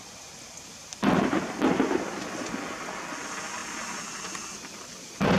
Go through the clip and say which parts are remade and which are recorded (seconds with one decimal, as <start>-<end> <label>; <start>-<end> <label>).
0.0-5.4 recorded